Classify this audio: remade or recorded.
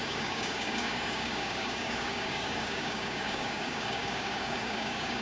remade